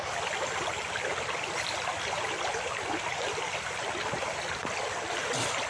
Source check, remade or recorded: recorded